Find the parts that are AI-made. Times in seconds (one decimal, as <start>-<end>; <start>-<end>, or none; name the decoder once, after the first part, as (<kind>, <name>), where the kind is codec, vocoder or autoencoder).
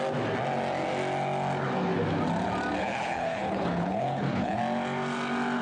2.8-4.6 (codec, HILCodec)